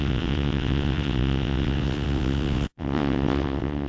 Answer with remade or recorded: remade